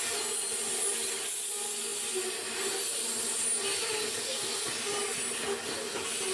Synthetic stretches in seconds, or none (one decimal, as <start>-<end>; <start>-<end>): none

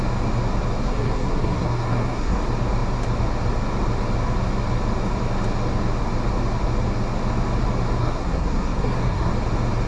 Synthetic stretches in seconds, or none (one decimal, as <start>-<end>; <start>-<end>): 0.8-2.4; 8.0-9.3

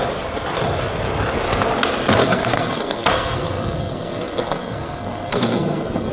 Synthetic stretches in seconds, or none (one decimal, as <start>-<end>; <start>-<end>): 2.2-6.1

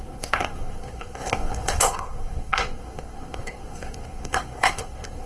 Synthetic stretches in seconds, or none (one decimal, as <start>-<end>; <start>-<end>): 0.0-5.3

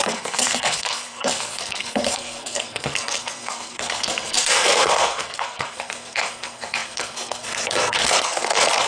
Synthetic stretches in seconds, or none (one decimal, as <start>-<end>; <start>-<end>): 0.0-8.9

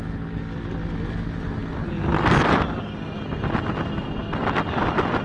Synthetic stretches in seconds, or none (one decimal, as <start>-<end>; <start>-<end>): none

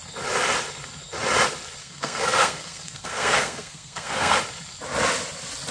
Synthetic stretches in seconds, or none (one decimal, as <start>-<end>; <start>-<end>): 1.8-4.4